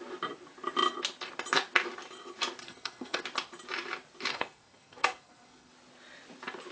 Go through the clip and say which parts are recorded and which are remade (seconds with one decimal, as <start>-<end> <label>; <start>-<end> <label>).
0.0-2.6 recorded; 2.6-3.2 remade; 3.2-4.3 recorded; 4.3-5.7 remade; 5.7-6.7 recorded